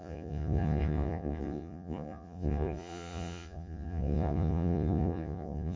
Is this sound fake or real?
fake